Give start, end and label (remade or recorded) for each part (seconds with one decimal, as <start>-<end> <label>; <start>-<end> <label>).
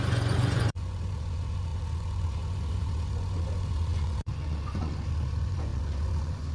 0.0-6.5 remade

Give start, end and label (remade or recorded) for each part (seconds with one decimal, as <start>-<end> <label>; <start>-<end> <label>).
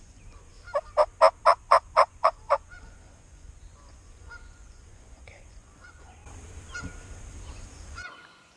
0.0-0.5 remade; 0.5-1.6 recorded; 1.6-6.2 remade; 6.2-7.5 recorded; 7.5-8.6 remade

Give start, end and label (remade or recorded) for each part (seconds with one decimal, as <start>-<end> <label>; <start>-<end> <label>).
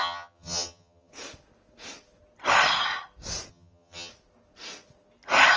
0.0-1.1 remade; 1.1-3.5 recorded; 3.5-4.1 remade; 4.1-5.6 recorded